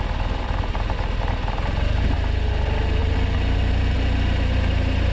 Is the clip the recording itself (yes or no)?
yes